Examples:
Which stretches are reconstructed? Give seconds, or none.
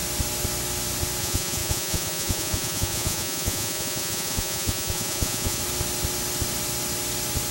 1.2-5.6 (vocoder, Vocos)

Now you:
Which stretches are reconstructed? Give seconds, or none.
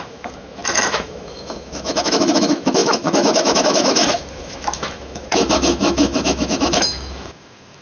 0.0-7.8 (autoencoder, DAC-VAE)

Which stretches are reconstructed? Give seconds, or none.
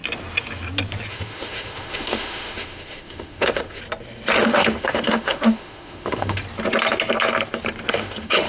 1.1-3.8 (autoencoder, DAC-VAE); 4.4-6.4; 7.9-8.5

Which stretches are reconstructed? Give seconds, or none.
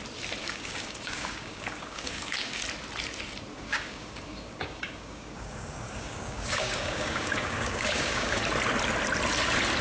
0.4-2.6 (codec, DAC); 3.5-8.4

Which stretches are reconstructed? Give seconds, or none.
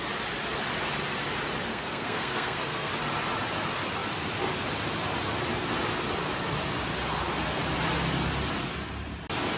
1.7-2.9 (codec, SNAC)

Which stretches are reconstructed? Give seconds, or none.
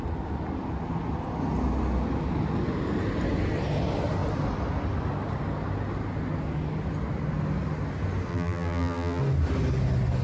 8.3-9.2 (vocoder, BigVGAN v2)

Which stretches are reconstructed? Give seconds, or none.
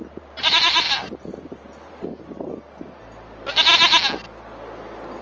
0.0-2.2 (vocoder, BigVGAN v2)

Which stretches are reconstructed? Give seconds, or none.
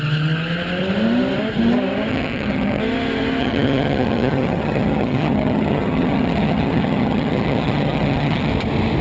2.1-2.8 (vocoder, HiFi-GAN); 3.4-8.5